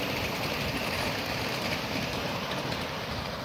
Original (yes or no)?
no